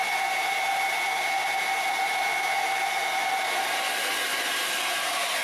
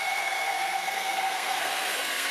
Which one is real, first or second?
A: first